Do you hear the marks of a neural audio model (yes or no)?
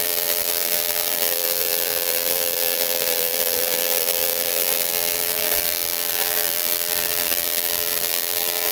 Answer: yes